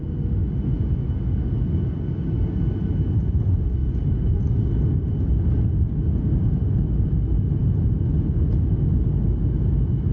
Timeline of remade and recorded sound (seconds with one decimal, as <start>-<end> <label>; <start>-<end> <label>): 0.0-3.8 recorded; 3.8-4.4 remade; 4.4-10.1 recorded

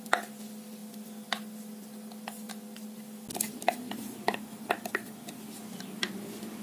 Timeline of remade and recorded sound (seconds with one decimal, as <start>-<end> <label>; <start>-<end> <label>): 0.0-6.6 recorded

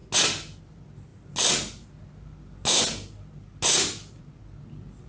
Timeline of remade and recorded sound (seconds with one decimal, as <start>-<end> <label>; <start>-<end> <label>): 0.0-5.1 recorded

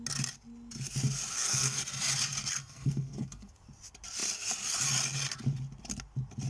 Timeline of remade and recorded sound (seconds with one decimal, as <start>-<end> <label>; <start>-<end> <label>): 0.0-1.3 recorded; 1.3-1.8 remade; 1.8-2.6 recorded; 2.6-3.5 remade; 3.5-6.5 recorded

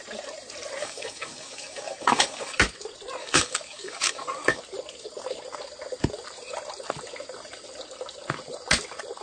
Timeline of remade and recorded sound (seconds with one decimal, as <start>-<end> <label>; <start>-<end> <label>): 0.0-0.8 recorded; 0.8-2.6 remade; 2.6-3.2 recorded; 3.2-4.6 remade; 4.6-9.2 recorded